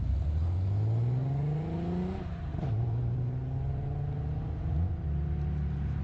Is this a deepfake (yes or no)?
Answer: no